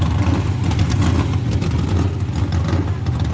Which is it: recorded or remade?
recorded